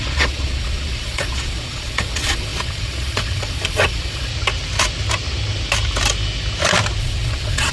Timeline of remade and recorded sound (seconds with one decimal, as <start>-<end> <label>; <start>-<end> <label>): 0.0-4.3 remade; 4.3-7.0 recorded; 7.0-7.7 remade